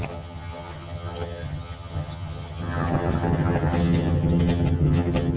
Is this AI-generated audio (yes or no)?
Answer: yes